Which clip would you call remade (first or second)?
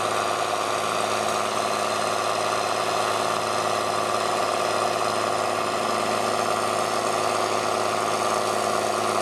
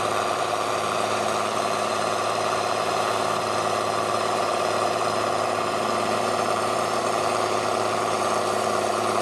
second